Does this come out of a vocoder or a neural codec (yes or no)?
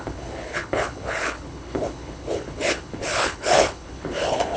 yes